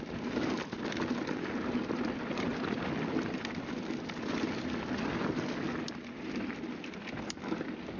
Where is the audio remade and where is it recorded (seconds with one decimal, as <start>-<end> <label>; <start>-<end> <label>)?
0.0-8.0 recorded